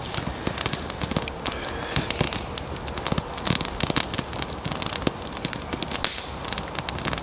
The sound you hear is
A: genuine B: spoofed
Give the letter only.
A